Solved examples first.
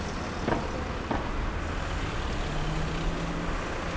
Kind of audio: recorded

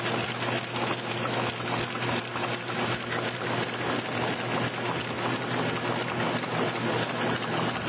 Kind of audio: recorded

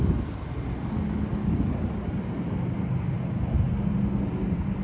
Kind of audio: recorded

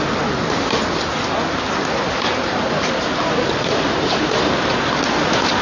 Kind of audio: recorded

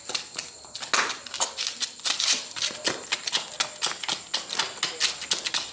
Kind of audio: recorded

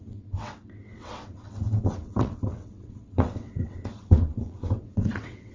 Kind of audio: remade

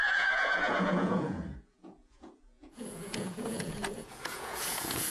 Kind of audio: remade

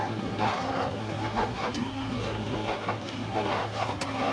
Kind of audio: remade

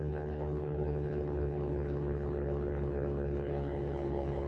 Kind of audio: remade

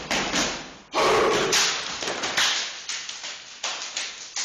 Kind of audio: recorded